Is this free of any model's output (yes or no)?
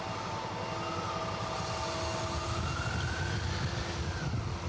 yes